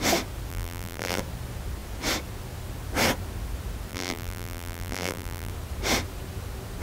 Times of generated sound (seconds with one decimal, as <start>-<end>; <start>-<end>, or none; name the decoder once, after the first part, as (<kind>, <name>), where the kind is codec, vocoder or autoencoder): 0.5-1.2 (vocoder, BigVGAN v2); 3.9-5.5